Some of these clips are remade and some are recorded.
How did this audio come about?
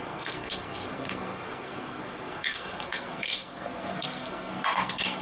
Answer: remade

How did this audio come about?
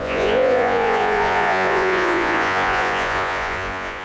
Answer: remade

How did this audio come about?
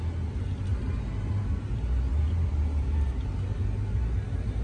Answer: recorded